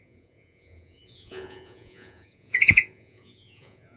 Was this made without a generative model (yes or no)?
no